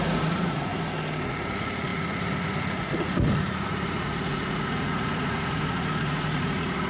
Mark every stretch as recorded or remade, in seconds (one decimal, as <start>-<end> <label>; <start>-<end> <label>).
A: 0.0-0.7 remade; 0.7-1.3 recorded; 1.3-6.9 remade